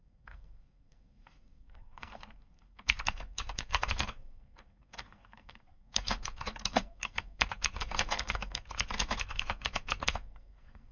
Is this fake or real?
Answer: fake